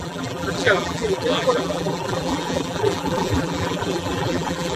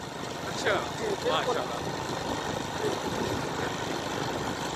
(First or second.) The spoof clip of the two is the first